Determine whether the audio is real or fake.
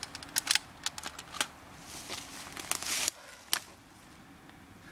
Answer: real